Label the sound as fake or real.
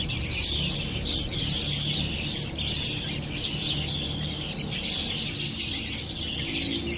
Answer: real